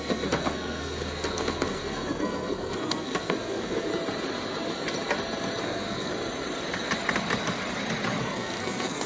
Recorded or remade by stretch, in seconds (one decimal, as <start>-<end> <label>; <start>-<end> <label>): 0.0-3.9 remade; 3.9-5.6 recorded; 5.6-6.1 remade; 6.1-8.2 recorded; 8.2-9.1 remade